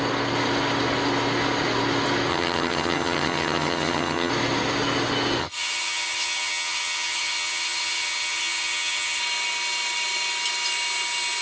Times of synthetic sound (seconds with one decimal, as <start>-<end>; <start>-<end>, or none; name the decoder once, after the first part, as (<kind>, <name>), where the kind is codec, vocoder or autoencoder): 2.3-4.3 (vocoder, HiFi-GAN); 5.4-9.2